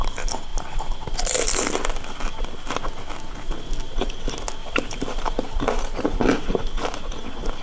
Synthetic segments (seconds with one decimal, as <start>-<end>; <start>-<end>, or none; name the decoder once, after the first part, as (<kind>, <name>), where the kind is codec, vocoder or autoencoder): 4.6-6.2 (vocoder, BigVGAN v2)